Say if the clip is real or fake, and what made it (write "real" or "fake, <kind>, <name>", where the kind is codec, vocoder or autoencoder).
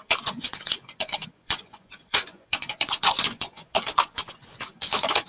fake, vocoder, Vocos